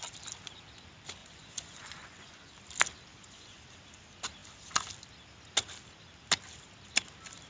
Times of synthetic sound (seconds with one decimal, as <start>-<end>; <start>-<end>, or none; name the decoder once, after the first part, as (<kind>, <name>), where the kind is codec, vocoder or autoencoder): 1.2-2.5 (vocoder, Vocos); 3.1-3.6